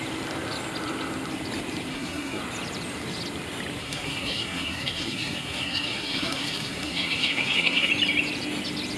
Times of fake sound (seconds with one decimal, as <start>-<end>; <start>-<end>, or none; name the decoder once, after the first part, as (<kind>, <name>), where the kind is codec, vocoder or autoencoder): 1.9-2.4 (codec, SNAC); 3.8-7.9